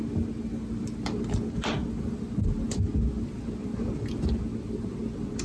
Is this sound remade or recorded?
recorded